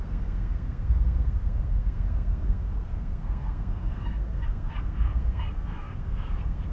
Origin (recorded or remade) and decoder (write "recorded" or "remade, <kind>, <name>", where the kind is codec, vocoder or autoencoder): remade, codec, SNAC